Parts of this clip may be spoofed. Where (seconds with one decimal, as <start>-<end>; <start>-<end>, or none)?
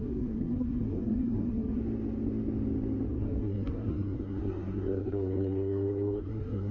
0.0-1.8; 3.1-6.7